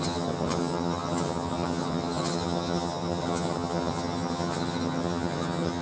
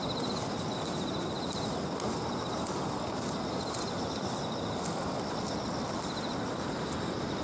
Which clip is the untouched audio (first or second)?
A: second